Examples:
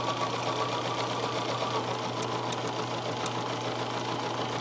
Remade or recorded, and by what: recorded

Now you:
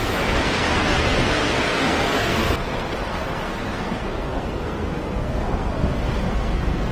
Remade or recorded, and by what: remade, codec, SNAC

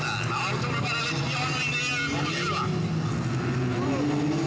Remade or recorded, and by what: recorded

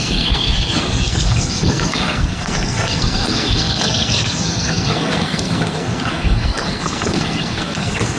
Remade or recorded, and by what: remade, codec, SNAC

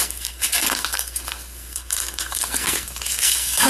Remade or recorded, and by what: remade, codec, SNAC